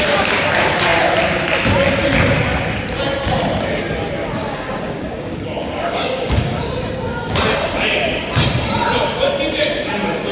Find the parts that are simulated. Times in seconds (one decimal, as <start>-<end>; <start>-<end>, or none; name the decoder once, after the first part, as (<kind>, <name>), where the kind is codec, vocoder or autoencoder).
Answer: 4.2-6.7 (codec, DAC)